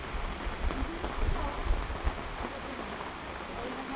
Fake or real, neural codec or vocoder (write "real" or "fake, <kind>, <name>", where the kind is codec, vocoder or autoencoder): real